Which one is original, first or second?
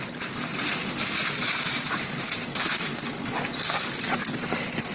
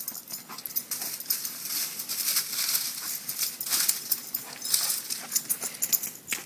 second